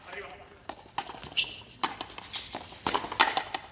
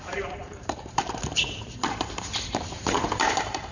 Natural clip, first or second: first